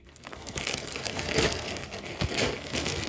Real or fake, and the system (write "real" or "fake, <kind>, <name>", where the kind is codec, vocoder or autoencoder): fake, codec, SNAC